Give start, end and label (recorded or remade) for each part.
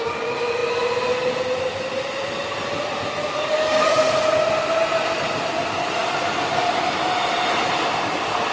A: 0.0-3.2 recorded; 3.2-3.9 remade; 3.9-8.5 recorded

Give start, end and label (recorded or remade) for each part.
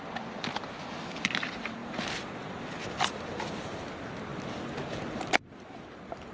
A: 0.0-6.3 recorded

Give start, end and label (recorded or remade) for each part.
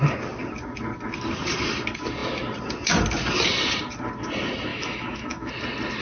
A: 0.0-4.7 recorded; 4.7-5.5 remade; 5.5-6.0 recorded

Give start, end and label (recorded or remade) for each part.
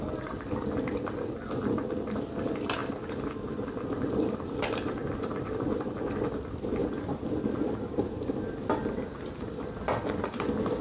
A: 0.0-2.8 remade; 2.8-3.3 recorded; 3.3-5.0 remade; 5.0-5.9 recorded; 5.9-6.8 remade; 6.8-10.2 recorded; 10.2-10.8 remade